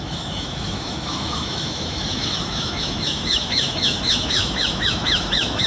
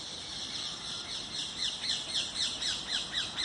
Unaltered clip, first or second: second